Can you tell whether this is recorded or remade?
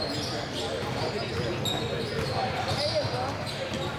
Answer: recorded